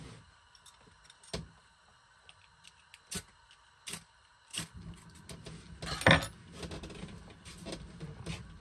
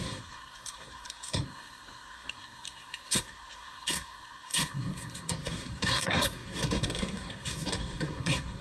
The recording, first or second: first